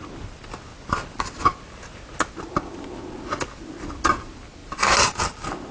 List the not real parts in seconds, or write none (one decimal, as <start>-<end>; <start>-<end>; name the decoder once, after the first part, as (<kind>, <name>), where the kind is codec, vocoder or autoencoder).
4.6-5.2 (vocoder, BigVGAN v2)